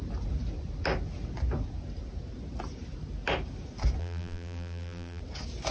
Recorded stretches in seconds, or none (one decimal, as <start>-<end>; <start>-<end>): 0.0-4.0; 5.2-5.7